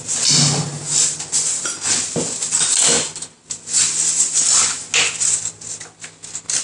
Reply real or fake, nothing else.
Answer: real